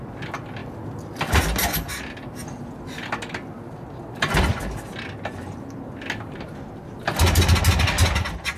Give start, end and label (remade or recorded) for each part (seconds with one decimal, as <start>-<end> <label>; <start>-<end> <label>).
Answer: 0.0-0.6 recorded; 0.6-1.4 remade; 1.4-8.6 recorded